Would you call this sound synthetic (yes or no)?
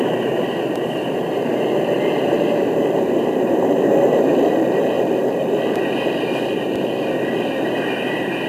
yes